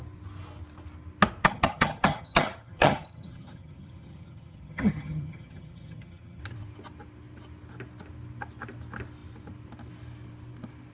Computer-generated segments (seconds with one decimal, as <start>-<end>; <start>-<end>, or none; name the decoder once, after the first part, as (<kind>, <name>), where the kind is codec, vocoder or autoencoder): 1.4-6.4 (vocoder, HiFi-GAN)